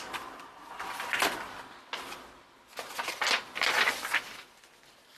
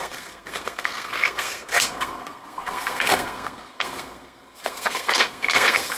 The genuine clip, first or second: first